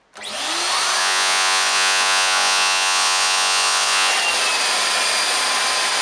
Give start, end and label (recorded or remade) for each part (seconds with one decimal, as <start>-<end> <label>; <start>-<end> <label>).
0.0-1.0 recorded; 1.0-4.1 remade; 4.1-6.0 recorded